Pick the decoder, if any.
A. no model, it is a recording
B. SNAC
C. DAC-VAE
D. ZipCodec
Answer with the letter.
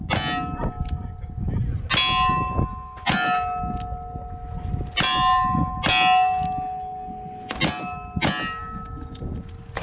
A